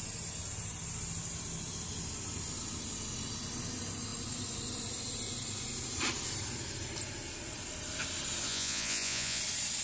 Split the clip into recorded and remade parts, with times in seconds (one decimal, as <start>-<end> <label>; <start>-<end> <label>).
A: 0.0-8.5 recorded; 8.5-9.4 remade; 9.4-9.8 recorded